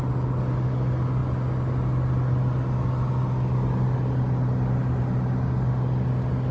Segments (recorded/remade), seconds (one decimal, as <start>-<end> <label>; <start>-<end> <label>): 0.0-6.5 recorded